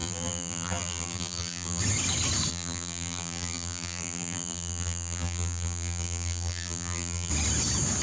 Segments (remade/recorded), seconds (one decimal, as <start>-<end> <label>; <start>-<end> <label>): 0.0-1.8 remade; 1.8-2.5 recorded; 2.5-7.3 remade; 7.3-8.0 recorded